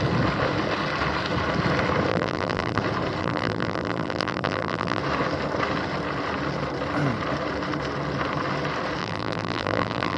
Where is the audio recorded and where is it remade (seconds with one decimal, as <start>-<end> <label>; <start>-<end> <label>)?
0.0-2.1 recorded; 2.1-2.8 remade; 2.8-3.2 recorded; 3.2-5.0 remade; 5.0-9.0 recorded; 9.0-10.2 remade